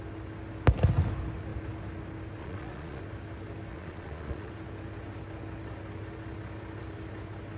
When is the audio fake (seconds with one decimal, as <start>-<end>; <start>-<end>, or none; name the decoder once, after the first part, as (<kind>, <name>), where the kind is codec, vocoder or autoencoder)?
2.4-3.0 (vocoder, Vocos); 3.7-4.5

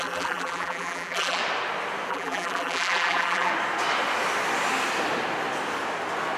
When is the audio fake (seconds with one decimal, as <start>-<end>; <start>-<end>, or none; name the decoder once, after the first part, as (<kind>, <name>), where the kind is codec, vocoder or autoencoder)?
0.0-1.4 (vocoder, BigVGAN v2); 2.1-3.5

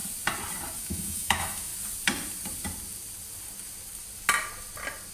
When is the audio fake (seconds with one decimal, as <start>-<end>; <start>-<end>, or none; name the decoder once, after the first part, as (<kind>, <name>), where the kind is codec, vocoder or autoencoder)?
0.8-1.7 (autoencoder, DAC-VAE)

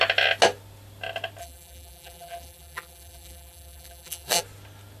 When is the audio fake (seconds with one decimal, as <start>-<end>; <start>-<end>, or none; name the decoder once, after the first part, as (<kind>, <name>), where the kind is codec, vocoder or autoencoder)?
1.4-4.4 (vocoder, BigVGAN v2)

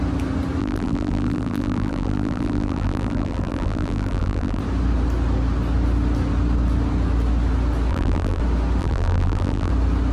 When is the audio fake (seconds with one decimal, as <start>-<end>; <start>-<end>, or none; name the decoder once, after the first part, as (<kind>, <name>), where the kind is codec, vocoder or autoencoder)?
0.6-4.6 (vocoder, BigVGAN v2); 7.9-8.4; 8.8-9.7

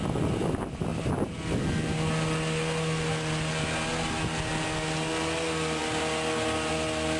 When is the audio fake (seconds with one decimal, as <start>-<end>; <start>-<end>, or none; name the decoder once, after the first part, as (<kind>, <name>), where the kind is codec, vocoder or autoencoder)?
none

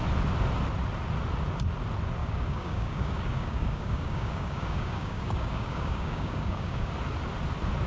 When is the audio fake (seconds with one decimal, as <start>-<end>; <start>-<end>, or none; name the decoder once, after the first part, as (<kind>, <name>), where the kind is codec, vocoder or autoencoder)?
2.2-6.9 (codec, DAC)

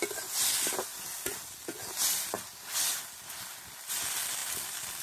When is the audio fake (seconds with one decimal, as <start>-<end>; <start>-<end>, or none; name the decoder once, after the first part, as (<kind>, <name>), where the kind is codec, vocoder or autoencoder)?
none